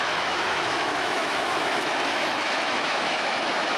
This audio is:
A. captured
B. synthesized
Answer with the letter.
B